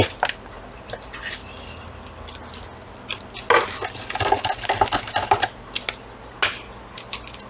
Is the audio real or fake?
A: real